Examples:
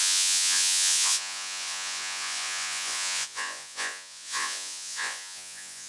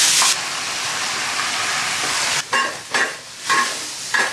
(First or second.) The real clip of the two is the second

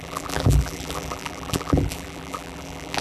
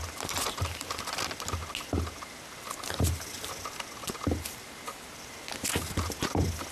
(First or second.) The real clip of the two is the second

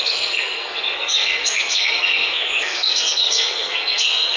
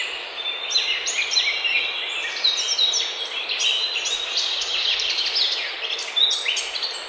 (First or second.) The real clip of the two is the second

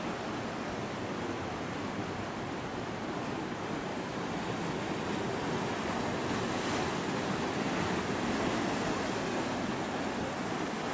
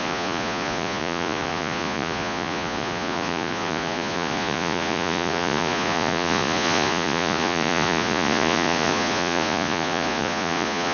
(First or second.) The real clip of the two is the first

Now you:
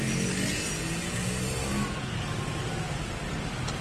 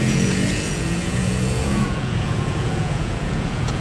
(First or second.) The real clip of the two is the first